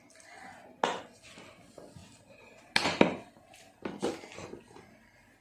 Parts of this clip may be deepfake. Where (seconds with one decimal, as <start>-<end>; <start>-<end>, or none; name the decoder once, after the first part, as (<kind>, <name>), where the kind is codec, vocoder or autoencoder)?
none